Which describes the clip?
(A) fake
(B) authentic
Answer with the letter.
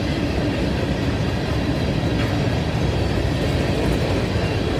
B